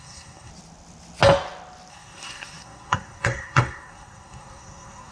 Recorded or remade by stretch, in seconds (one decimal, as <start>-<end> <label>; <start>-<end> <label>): 0.0-0.5 remade; 0.5-1.9 recorded; 1.9-5.1 remade